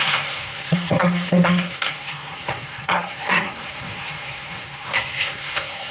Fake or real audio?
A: fake